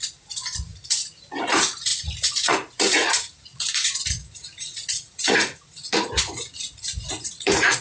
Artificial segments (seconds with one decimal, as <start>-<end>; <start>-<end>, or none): 0.0-7.8